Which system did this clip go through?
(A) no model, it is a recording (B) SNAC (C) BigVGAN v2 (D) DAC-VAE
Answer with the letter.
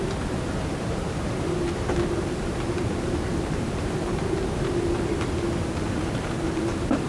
C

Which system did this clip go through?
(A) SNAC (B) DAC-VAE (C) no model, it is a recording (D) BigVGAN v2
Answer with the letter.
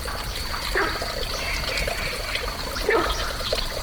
C